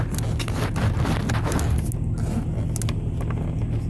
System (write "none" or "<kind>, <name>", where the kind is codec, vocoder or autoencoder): none